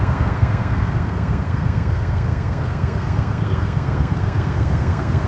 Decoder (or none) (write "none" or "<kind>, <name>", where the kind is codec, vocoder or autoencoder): codec, SNAC